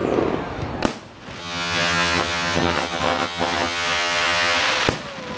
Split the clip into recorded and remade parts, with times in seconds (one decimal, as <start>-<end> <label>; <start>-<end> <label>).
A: 0.0-1.4 recorded; 1.4-4.6 remade; 4.6-5.4 recorded

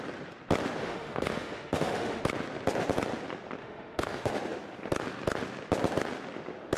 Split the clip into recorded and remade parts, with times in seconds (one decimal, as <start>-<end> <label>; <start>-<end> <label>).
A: 0.0-0.8 recorded; 0.8-2.2 remade; 2.2-3.6 recorded; 3.6-4.3 remade; 4.3-6.8 recorded

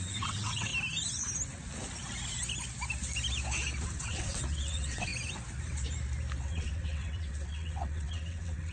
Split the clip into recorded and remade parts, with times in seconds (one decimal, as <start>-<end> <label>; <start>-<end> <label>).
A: 0.0-0.7 remade; 0.7-3.8 recorded; 3.8-5.1 remade; 5.1-6.4 recorded; 6.4-8.7 remade

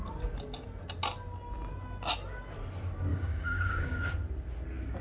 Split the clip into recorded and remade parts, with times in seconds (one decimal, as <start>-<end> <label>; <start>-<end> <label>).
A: 0.0-3.1 recorded; 3.1-4.1 remade; 4.1-5.0 recorded